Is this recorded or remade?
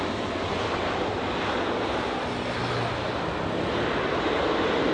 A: recorded